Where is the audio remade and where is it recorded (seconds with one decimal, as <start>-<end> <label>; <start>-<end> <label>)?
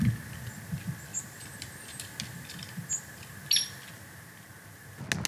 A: 0.0-5.3 recorded